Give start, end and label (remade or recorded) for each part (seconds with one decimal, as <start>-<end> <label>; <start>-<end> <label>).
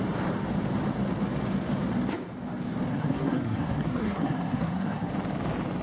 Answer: 0.0-2.9 recorded; 2.9-5.1 remade; 5.1-5.8 recorded